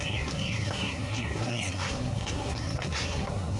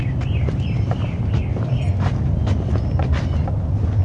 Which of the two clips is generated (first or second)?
first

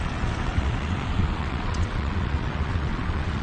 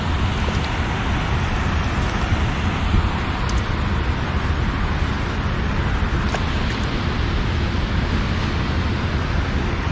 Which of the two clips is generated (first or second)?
first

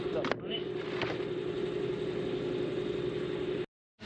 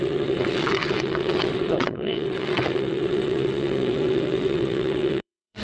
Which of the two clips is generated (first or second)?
second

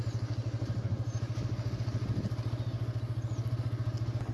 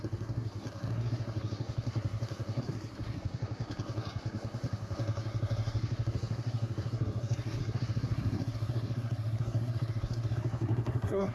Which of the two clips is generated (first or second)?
second